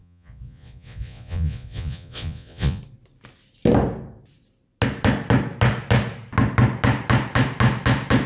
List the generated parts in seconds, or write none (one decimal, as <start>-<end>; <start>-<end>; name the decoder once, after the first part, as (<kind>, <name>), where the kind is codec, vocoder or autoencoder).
0.0-2.8 (vocoder, Vocos)